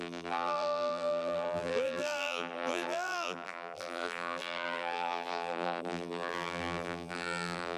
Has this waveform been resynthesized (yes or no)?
yes